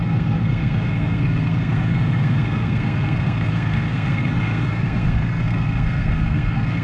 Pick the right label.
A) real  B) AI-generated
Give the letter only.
B